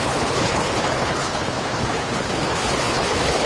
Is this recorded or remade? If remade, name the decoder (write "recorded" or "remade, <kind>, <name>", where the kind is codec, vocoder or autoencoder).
remade, codec, HILCodec